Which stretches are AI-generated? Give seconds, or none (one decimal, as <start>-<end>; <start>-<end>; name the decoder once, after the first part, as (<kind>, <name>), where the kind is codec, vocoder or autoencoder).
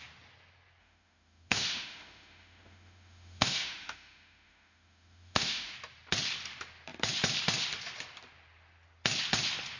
0.8-5.7 (autoencoder, DAC-VAE)